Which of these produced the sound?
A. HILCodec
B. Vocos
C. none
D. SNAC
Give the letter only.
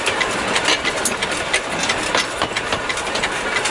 C